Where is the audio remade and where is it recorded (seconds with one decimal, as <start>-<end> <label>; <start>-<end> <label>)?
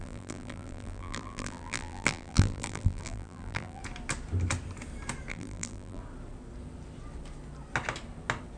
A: 0.0-3.8 remade; 3.8-5.3 recorded; 5.3-6.0 remade; 6.0-8.6 recorded